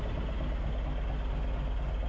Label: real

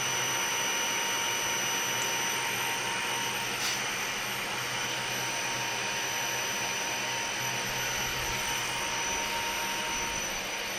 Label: real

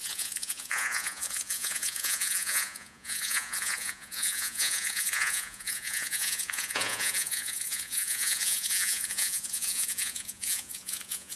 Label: fake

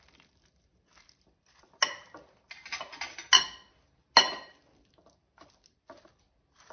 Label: real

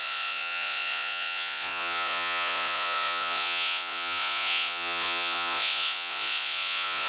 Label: fake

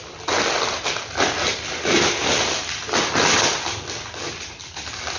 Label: real